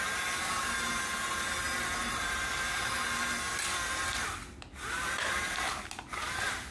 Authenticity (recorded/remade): recorded